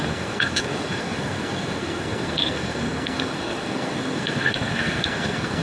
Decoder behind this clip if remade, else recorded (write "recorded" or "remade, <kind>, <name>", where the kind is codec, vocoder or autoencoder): remade, codec, SNAC